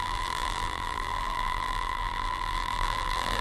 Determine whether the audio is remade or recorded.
remade